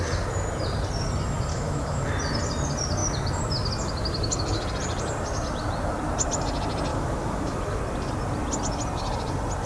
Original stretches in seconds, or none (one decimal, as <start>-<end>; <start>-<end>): 0.0-1.5; 2.0-6.9; 7.8-9.7